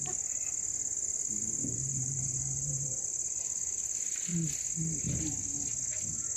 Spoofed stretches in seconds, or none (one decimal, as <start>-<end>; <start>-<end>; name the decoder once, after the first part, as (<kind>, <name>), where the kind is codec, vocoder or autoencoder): 1.6-3.4 (vocoder, BigVGAN v2)